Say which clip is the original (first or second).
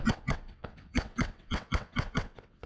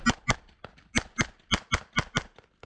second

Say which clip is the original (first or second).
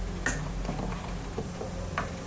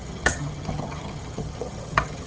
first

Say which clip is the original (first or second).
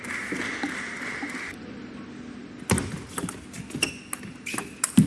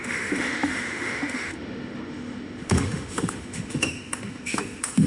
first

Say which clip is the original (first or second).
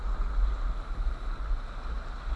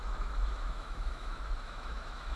first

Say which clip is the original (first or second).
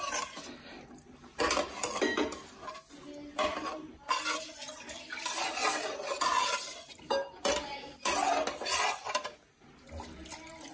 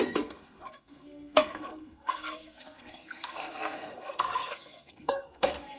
first